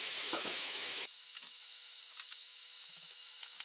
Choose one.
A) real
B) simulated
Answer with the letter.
B